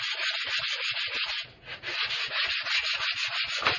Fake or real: real